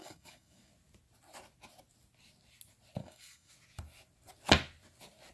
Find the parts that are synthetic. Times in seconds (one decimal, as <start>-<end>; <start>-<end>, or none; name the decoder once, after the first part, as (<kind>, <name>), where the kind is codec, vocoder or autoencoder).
0.0-0.7 (codec, DAC); 3.0-3.5